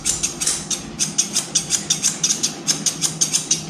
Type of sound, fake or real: real